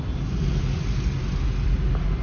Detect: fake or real real